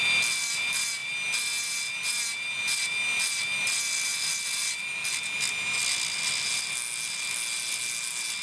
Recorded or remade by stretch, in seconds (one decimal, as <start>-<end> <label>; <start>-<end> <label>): 0.0-8.4 recorded

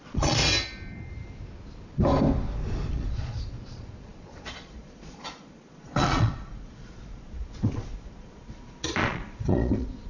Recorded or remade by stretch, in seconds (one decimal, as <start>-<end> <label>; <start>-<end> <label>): 0.0-0.4 remade; 0.4-2.9 recorded; 2.9-10.1 remade